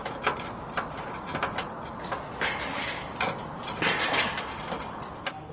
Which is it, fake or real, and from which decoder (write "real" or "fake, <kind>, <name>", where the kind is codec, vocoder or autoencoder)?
real